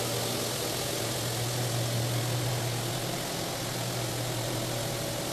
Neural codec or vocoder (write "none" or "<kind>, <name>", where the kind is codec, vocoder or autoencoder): none